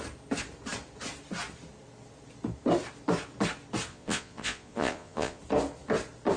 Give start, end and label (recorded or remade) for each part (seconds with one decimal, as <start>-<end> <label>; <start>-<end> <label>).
0.0-3.9 recorded; 3.9-5.4 remade; 5.4-6.4 recorded